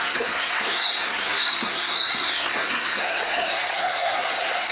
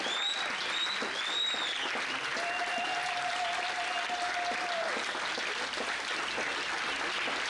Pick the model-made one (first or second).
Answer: first